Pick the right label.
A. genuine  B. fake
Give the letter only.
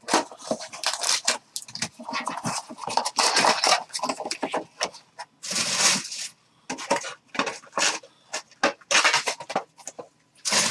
A